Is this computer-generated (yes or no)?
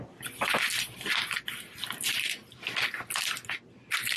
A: no